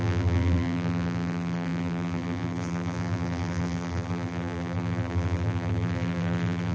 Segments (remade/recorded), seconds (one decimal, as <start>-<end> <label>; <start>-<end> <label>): 0.0-6.7 remade